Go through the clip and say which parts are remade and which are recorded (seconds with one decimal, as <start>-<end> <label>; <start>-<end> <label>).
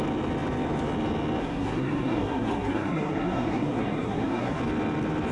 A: 0.0-1.4 recorded; 1.4-4.6 remade; 4.6-5.3 recorded